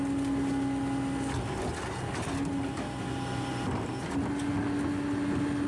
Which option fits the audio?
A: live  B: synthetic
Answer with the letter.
A